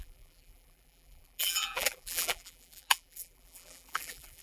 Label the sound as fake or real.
fake